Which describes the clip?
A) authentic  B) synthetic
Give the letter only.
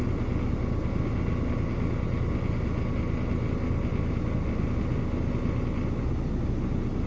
A